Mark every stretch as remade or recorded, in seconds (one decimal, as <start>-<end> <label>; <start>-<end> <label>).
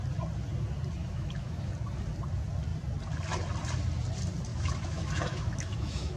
0.0-1.0 recorded; 1.0-1.7 remade; 1.7-4.5 recorded; 4.5-6.2 remade